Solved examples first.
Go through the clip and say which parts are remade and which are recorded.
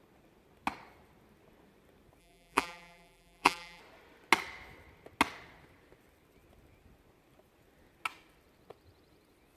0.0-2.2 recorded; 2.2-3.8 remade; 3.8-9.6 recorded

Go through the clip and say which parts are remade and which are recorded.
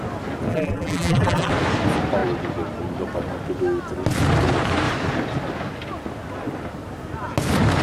0.0-0.5 recorded; 0.5-1.5 remade; 1.5-7.8 recorded